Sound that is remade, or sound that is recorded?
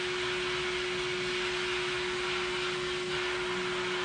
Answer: recorded